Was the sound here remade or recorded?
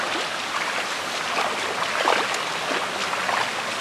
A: recorded